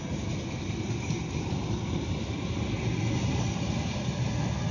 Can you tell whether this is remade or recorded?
recorded